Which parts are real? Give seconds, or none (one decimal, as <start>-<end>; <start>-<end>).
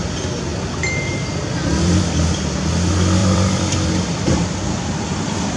0.0-0.5; 2.1-3.2; 5.0-5.6